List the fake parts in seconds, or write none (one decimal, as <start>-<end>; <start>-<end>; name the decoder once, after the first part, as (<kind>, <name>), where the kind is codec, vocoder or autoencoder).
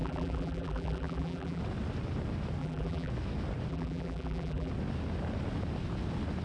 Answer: 0.0-1.6 (vocoder, BigVGAN v2); 2.6-3.1; 3.7-4.7